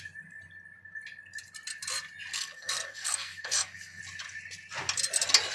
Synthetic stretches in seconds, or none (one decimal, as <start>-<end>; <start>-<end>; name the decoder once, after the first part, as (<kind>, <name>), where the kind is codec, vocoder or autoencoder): 2.3-4.0 (codec, SNAC)